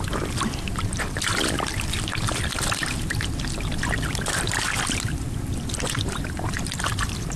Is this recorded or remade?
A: recorded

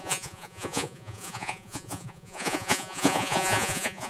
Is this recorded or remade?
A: remade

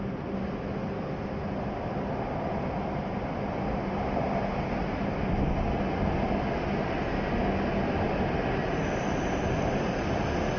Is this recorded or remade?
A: recorded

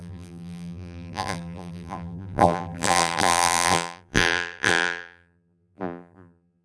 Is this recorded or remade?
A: remade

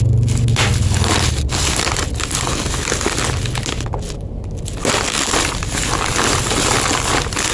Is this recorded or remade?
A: recorded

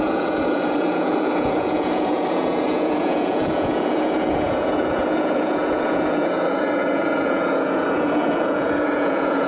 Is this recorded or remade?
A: remade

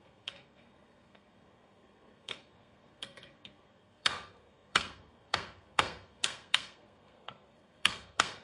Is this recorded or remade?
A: remade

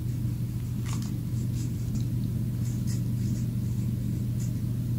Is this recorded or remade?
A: recorded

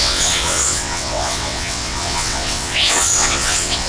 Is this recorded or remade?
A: remade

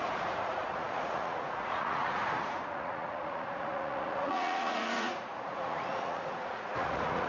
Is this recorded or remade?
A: remade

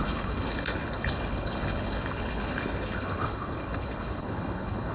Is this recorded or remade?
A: remade